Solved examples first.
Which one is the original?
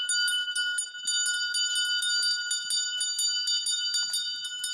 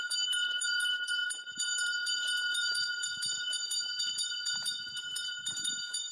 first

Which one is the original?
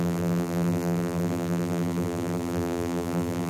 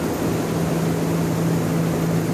second